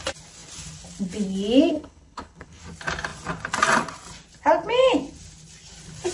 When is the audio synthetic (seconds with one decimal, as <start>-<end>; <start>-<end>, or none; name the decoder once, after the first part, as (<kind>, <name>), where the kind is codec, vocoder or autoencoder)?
1.7-2.6 (codec, HILCodec)